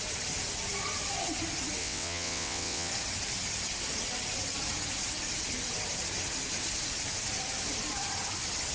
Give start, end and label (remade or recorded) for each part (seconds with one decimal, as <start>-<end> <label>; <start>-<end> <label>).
0.0-1.8 recorded; 1.8-2.9 remade; 2.9-8.7 recorded